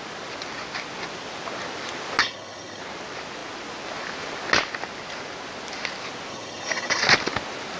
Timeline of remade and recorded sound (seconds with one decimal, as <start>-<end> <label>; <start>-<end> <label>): 0.0-2.2 recorded; 2.2-2.8 remade; 2.8-6.3 recorded; 6.3-7.0 remade; 7.0-7.8 recorded